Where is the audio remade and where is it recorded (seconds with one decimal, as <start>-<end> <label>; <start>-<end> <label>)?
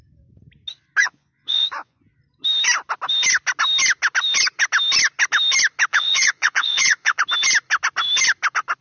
0.0-1.0 recorded; 1.0-2.1 remade; 2.1-5.9 recorded; 5.9-7.2 remade; 7.2-8.8 recorded